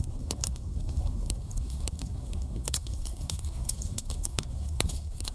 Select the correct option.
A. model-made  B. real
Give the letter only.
A